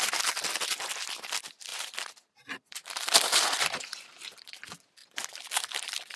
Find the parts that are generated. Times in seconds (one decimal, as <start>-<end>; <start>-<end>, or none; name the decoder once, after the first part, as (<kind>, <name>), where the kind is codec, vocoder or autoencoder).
0.0-6.2 (vocoder, BigVGAN v2)

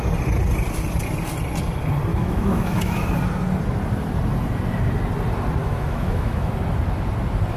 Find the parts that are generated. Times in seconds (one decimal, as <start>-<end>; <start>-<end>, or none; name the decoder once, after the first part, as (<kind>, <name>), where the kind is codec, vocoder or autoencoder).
2.1-3.1 (autoencoder, DAC-VAE); 5.6-6.5

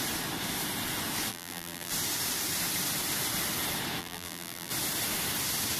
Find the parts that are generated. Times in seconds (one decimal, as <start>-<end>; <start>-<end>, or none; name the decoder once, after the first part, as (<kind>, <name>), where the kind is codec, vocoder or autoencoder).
1.3-1.9 (vocoder, BigVGAN v2); 4.0-4.7

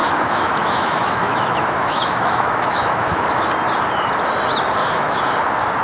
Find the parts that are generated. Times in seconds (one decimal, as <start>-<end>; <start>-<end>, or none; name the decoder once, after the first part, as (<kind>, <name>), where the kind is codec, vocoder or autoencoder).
0.0-3.5 (autoencoder, DAC-VAE); 4.8-5.3

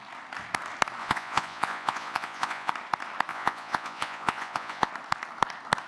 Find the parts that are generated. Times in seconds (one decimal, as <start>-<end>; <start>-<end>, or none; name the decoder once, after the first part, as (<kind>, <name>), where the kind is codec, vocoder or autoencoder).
1.0-2.7 (vocoder, Vocos); 3.3-4.9